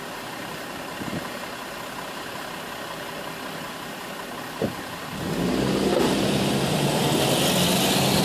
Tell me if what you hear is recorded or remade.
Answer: recorded